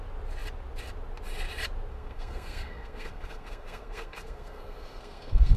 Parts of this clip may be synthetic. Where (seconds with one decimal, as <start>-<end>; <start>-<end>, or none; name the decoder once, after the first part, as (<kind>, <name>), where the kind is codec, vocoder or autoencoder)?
1.9-5.6 (codec, SNAC)

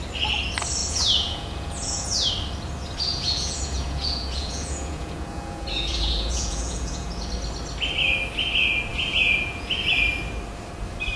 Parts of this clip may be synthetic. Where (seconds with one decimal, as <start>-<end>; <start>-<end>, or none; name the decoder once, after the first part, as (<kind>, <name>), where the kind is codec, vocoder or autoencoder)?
0.8-2.3 (vocoder, Vocos); 3.1-7.3; 8.9-9.7

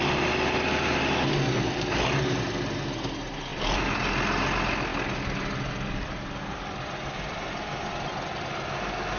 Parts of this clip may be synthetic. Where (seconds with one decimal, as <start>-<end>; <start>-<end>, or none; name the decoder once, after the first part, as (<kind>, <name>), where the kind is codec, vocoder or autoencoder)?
none

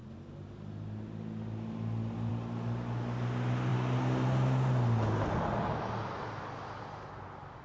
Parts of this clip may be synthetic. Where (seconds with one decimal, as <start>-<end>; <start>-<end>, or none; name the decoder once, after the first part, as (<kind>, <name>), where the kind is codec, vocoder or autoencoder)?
none

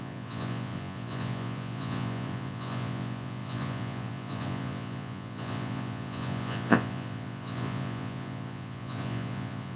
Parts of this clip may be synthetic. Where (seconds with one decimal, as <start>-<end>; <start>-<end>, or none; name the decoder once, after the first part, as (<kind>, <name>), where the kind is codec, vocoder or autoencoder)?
0.0-9.8 (vocoder, Vocos)